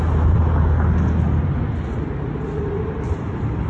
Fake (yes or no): no